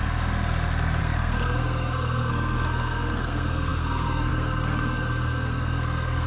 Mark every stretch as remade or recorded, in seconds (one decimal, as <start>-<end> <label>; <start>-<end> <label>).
0.0-1.0 recorded; 1.0-6.3 remade